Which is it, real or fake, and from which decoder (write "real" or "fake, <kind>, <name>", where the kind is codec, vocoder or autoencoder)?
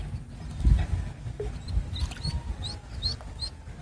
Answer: real